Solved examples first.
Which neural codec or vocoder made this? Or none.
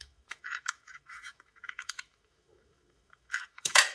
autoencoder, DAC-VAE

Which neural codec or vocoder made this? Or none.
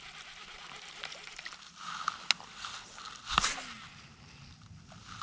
none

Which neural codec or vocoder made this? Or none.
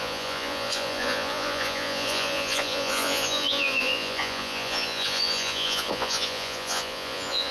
vocoder, Vocos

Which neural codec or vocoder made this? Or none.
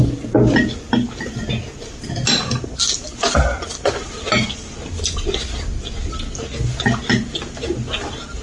none